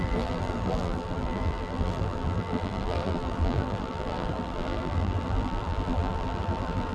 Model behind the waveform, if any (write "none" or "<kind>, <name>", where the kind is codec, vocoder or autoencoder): vocoder, BigVGAN v2